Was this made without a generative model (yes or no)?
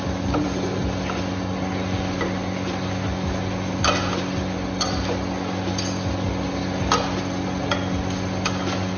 yes